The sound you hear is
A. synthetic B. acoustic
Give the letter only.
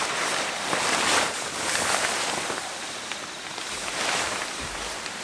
B